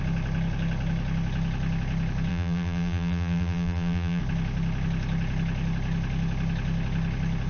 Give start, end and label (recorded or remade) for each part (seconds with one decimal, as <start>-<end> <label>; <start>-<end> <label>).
0.0-2.3 recorded; 2.3-4.2 remade; 4.2-7.5 recorded